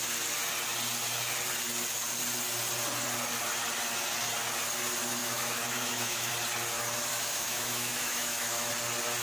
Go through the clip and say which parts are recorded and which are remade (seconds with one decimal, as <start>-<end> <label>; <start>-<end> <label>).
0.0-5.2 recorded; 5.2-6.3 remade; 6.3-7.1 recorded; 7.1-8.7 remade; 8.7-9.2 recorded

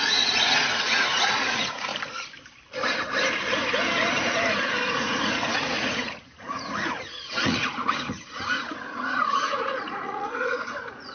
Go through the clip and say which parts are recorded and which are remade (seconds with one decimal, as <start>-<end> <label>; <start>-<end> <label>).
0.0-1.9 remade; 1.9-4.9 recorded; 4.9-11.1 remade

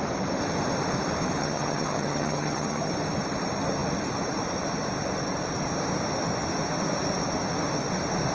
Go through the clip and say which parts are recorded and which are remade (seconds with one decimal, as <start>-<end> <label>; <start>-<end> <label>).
0.0-1.4 recorded; 1.4-2.9 remade; 2.9-8.3 recorded